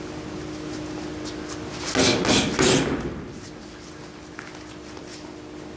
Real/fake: real